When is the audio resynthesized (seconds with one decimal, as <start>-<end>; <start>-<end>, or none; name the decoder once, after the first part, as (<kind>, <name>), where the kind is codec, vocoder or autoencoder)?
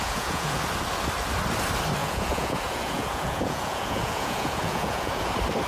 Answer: 0.0-0.6 (vocoder, Vocos); 2.0-5.3